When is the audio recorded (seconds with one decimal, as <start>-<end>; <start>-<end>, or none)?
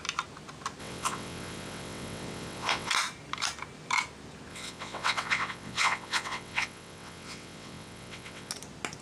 0.0-0.8; 2.9-4.5; 8.5-9.0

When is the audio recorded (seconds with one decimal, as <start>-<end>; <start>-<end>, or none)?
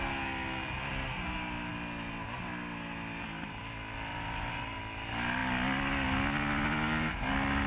0.0-4.1; 4.8-7.7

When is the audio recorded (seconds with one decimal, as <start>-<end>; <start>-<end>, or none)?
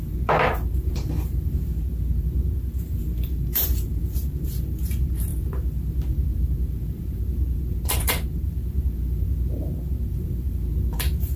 none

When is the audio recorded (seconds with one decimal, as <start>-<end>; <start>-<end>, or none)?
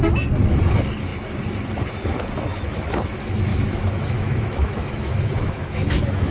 0.0-2.5; 3.0-3.5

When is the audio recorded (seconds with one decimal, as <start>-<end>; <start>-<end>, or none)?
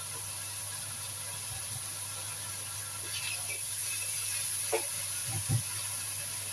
0.0-6.5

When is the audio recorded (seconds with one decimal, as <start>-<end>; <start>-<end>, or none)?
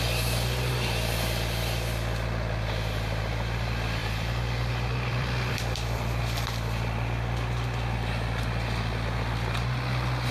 0.0-4.0; 6.2-10.3